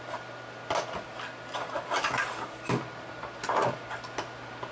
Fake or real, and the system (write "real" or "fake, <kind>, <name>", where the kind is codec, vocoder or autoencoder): real